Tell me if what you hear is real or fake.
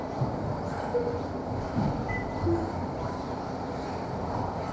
fake